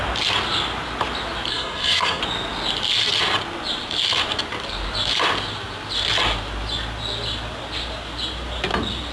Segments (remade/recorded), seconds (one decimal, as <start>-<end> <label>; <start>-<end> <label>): 0.0-1.5 recorded; 1.5-2.2 remade; 2.2-9.1 recorded